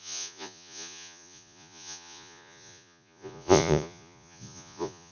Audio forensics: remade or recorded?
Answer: remade